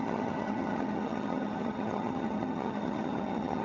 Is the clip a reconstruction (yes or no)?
yes